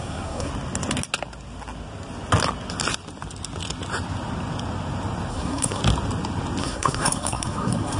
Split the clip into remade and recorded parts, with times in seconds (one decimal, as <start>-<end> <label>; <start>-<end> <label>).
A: 0.0-0.5 remade; 0.5-5.3 recorded; 5.3-5.8 remade; 5.8-6.6 recorded; 6.6-8.0 remade